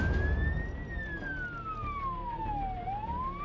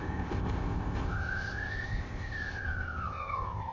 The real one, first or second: first